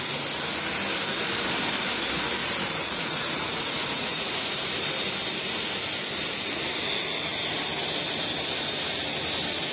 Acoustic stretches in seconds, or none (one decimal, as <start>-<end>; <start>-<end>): 0.0-2.8; 4.5-9.7